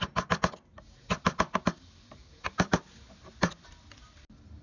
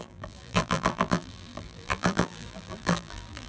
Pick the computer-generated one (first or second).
second